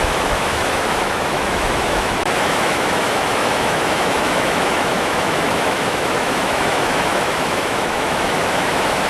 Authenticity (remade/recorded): remade